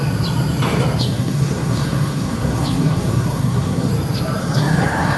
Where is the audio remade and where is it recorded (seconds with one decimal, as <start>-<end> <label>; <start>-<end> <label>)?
0.0-1.0 recorded; 1.0-3.9 remade; 3.9-4.4 recorded; 4.4-5.2 remade